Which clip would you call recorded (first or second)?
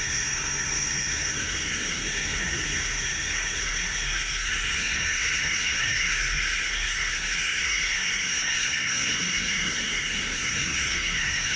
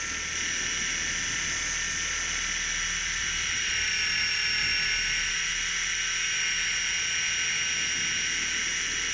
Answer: second